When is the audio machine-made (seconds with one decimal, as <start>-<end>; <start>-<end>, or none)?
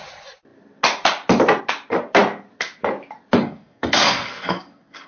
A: 3.4-5.1